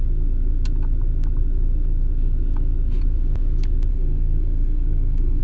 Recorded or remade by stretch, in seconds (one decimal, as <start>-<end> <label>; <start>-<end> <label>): 0.0-3.9 recorded; 3.9-5.4 remade